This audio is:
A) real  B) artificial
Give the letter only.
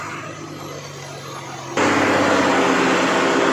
A